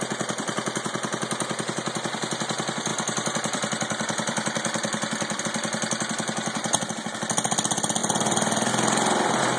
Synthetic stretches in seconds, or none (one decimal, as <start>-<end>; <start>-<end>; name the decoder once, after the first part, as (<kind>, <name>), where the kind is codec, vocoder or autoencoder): 2.9-5.4 (vocoder, BigVGAN v2); 8.0-8.7